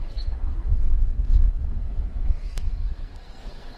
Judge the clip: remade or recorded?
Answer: remade